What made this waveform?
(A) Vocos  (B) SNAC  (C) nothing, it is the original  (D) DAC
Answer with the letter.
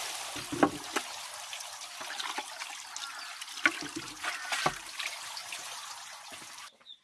C